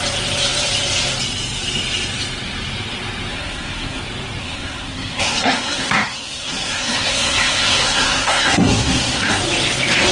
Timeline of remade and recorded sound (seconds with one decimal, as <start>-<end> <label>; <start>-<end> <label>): 0.0-3.3 recorded; 3.3-4.0 remade; 4.0-4.4 recorded; 4.4-9.4 remade; 9.4-10.1 recorded